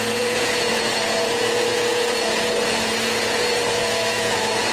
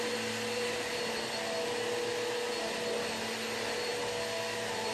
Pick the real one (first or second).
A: second